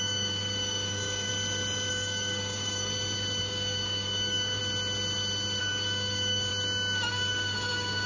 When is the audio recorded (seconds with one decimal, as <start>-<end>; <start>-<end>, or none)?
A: 1.3-1.9; 2.9-3.4; 4.6-5.6; 6.5-7.1